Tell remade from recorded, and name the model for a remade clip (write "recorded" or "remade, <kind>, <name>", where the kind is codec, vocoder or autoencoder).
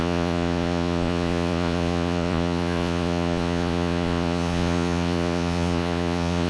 remade, vocoder, Vocos